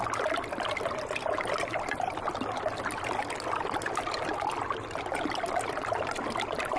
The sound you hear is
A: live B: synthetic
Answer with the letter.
A